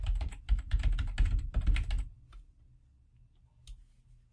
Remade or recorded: recorded